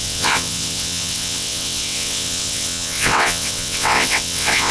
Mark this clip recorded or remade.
remade